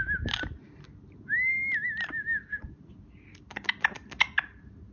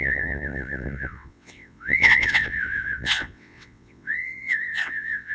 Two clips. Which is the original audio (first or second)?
first